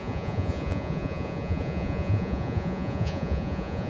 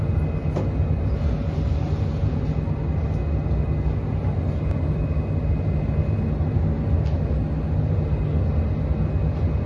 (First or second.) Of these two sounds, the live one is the second